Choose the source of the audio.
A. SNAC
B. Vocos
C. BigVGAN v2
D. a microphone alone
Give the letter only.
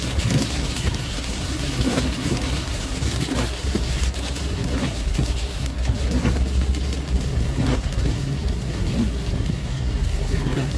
A